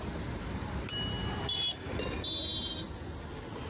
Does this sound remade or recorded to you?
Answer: recorded